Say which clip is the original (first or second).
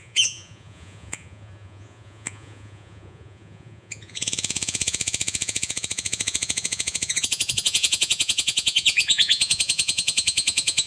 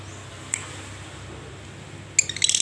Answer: second